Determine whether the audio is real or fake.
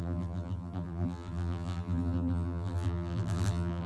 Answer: fake